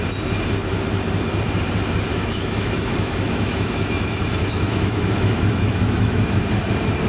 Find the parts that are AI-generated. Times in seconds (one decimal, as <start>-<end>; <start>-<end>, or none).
2.1-6.4

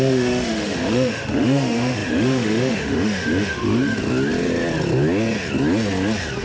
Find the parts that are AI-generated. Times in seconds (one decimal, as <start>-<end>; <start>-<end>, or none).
0.0-4.0

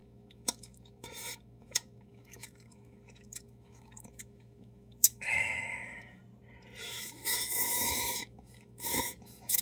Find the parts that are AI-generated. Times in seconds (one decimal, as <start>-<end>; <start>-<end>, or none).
0.0-6.2; 6.8-9.6

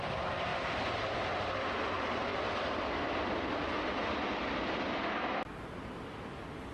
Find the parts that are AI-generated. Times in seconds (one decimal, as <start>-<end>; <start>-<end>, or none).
none